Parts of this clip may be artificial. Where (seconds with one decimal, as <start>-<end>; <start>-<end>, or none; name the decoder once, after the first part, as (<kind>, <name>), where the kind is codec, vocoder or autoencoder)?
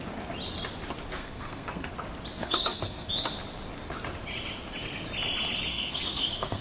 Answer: 1.2-1.9 (codec, SNAC); 2.4-3.1; 5.7-6.6